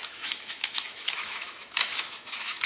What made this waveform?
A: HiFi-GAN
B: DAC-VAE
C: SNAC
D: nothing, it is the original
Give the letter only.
B